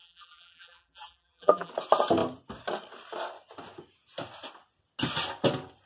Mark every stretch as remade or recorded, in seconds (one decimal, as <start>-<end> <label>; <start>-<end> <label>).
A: 0.0-1.7 remade; 1.7-5.9 recorded